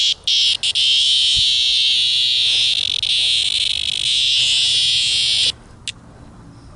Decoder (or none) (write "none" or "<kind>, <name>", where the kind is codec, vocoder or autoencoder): none